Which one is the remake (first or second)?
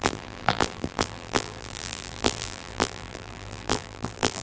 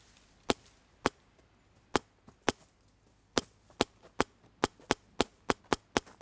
first